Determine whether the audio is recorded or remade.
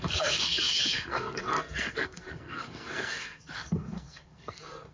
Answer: remade